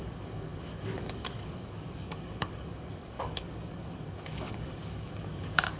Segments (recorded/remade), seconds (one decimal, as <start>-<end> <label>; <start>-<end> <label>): 0.0-5.8 remade